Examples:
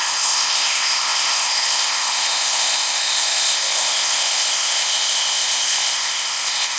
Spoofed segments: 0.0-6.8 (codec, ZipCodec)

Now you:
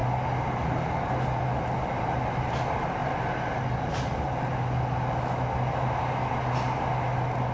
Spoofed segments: none